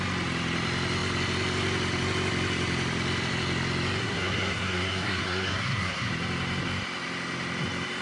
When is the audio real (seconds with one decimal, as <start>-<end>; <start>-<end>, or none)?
0.0-4.0; 6.1-8.0